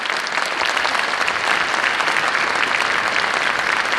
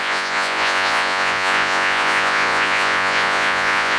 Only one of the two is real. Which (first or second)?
first